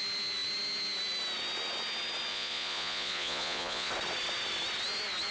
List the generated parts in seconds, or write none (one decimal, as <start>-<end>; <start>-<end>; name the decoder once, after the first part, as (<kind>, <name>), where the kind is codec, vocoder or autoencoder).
2.3-3.9 (vocoder, Vocos)